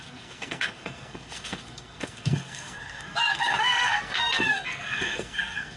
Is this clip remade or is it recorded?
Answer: remade